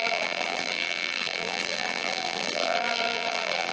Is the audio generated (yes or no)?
yes